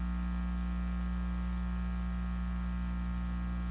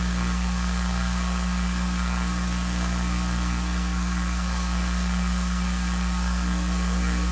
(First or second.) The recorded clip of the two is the first